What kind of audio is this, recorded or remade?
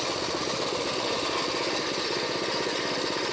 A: recorded